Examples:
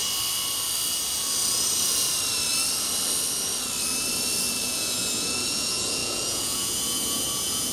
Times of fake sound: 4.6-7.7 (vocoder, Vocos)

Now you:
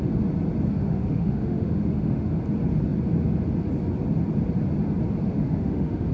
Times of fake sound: 0.7-2.4 (autoencoder, DAC-VAE); 5.3-6.1